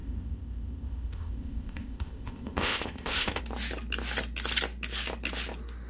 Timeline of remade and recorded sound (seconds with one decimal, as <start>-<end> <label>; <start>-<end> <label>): 0.0-3.4 remade; 3.4-5.9 recorded